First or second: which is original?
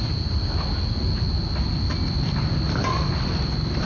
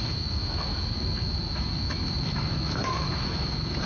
first